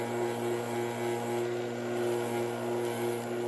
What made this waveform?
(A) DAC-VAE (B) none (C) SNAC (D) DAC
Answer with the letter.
B